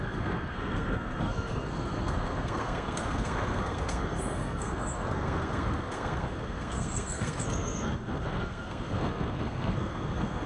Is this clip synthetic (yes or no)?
yes